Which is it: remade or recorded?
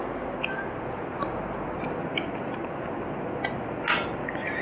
recorded